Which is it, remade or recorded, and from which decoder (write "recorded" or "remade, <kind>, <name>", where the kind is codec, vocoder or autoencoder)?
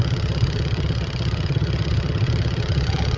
remade, vocoder, HiFi-GAN